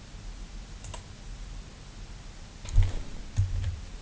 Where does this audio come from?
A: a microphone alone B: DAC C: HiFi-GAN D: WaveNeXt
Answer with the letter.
A